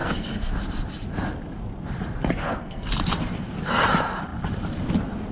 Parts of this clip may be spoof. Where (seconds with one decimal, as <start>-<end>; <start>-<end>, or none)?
0.0-0.5; 2.4-2.9